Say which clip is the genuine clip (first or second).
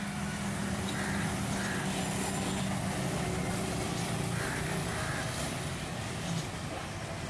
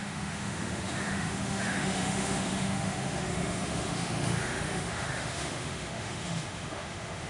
first